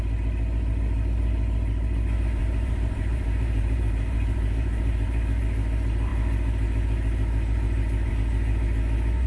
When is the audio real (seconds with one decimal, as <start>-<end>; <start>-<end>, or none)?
0.0-2.4; 5.4-9.3